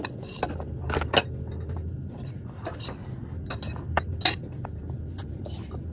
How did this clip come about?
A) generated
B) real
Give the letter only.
B